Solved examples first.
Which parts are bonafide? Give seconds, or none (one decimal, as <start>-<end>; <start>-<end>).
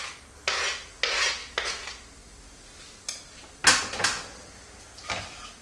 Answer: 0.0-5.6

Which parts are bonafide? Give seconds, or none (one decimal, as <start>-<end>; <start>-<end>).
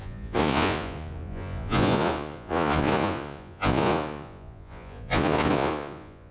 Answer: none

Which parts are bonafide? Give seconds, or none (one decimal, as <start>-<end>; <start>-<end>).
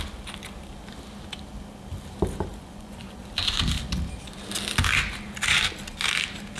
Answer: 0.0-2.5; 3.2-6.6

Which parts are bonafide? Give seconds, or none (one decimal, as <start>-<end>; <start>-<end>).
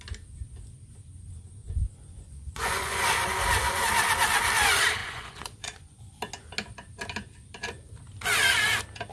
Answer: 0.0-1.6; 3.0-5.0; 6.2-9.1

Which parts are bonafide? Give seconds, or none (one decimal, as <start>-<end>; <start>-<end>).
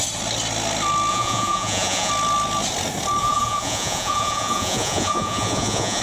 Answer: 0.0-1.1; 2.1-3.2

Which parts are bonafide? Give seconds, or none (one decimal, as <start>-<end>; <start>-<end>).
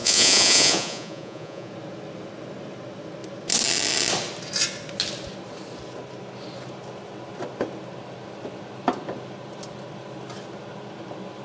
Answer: 1.7-11.4